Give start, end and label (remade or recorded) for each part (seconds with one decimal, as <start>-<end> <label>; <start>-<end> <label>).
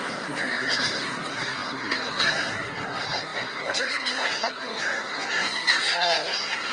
0.0-6.7 remade